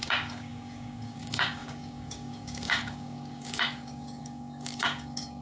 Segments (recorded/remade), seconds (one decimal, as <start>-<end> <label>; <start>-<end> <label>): 0.0-5.4 remade